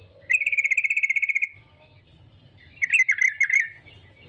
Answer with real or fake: real